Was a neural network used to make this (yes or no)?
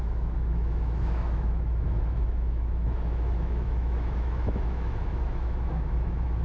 yes